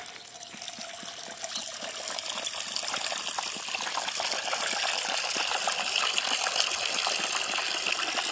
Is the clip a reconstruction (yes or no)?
no